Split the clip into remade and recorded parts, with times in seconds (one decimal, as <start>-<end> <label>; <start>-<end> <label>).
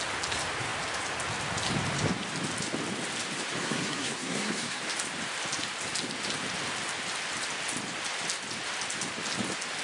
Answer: 0.0-3.6 recorded; 3.6-4.8 remade; 4.8-9.8 recorded